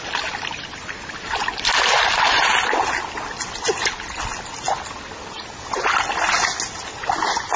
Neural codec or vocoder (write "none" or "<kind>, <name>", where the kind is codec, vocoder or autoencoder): none